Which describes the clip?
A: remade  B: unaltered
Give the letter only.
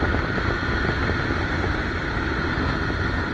B